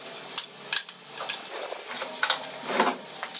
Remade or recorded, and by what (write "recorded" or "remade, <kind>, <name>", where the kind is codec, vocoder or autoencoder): recorded